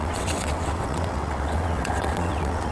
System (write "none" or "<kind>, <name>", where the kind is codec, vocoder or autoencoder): vocoder, WaveNeXt